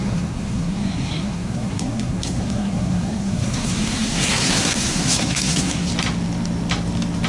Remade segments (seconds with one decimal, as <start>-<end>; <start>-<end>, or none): 0.0-5.9